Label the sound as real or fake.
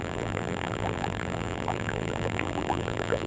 fake